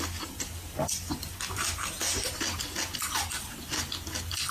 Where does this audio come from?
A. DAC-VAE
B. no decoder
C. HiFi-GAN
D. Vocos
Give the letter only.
B